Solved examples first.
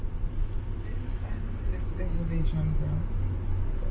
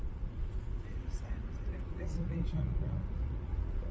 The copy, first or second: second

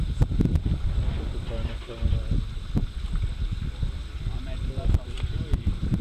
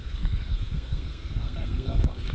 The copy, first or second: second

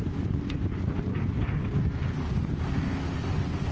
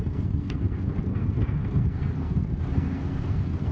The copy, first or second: second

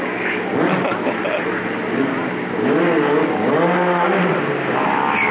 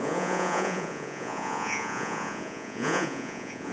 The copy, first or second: second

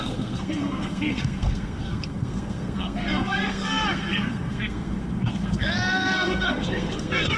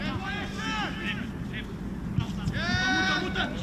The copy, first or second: first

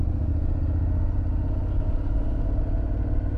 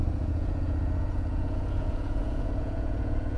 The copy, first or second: second